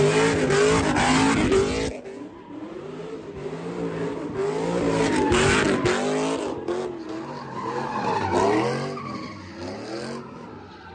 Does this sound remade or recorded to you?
recorded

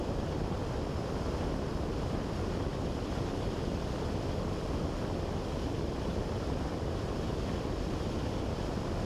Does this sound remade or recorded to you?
recorded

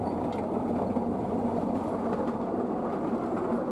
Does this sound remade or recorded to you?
recorded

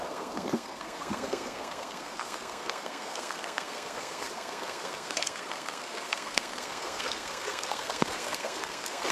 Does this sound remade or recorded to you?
remade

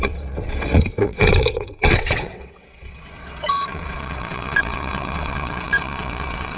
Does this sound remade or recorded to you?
remade